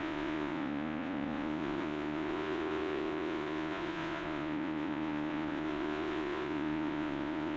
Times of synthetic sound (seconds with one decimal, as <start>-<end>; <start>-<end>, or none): 0.0-7.6